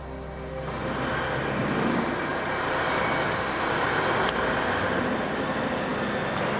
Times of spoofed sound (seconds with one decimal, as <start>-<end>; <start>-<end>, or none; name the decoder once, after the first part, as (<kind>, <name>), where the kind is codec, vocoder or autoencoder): none